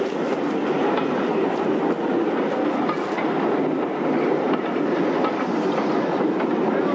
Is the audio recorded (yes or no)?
yes